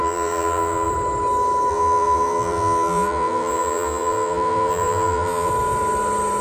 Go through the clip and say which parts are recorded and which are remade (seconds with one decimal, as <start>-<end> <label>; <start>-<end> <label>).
0.0-0.9 remade; 0.9-1.7 recorded; 1.7-5.5 remade; 5.5-6.4 recorded